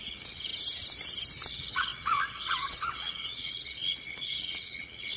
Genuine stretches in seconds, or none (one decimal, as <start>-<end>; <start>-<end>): 0.5-1.5